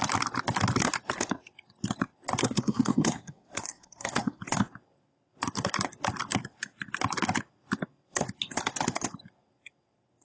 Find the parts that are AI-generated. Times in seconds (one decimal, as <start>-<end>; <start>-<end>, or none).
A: 2.4-4.4